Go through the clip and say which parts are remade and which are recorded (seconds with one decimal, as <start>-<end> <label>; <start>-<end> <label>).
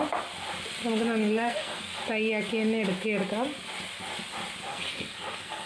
0.0-1.2 recorded; 1.2-2.0 remade; 2.0-4.7 recorded; 4.7-5.7 remade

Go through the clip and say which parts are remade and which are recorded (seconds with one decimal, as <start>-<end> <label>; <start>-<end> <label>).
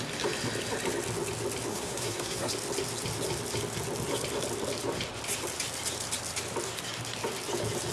0.0-1.7 recorded; 1.7-2.5 remade; 2.5-7.9 recorded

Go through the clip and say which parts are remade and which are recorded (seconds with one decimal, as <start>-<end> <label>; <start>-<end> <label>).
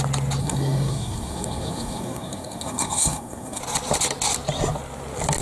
0.0-0.4 recorded; 0.4-3.6 remade; 3.6-5.4 recorded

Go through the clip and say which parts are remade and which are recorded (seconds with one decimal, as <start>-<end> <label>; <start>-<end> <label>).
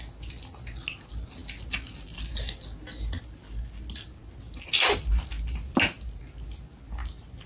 0.0-7.5 recorded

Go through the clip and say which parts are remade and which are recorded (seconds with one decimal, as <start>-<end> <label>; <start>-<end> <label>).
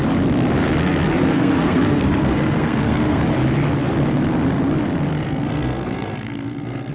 0.0-0.8 recorded; 0.8-3.2 remade; 3.2-5.1 recorded; 5.1-6.9 remade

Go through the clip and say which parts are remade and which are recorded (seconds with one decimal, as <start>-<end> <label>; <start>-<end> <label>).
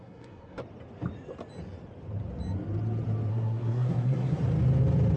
0.0-0.6 remade; 0.6-3.3 recorded; 3.3-4.4 remade; 4.4-5.2 recorded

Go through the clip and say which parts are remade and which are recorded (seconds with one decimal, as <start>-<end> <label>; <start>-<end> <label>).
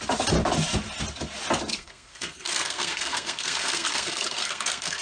0.0-1.7 recorded; 1.7-5.0 remade